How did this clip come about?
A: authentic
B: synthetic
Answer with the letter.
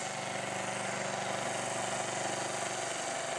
A